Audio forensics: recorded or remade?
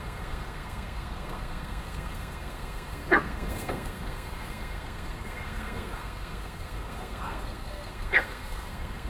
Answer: remade